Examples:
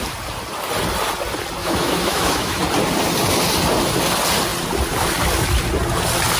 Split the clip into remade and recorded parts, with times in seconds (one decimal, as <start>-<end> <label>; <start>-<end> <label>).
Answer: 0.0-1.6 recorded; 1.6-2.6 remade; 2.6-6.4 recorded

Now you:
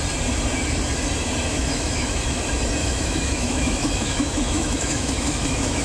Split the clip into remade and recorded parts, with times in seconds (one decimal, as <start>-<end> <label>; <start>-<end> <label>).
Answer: 0.0-1.5 recorded; 1.5-2.4 remade; 2.4-2.8 recorded; 2.8-5.8 remade

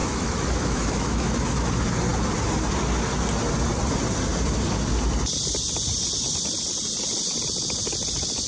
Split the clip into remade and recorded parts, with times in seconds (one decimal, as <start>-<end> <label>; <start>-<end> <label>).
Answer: 0.0-1.7 remade; 1.7-8.5 recorded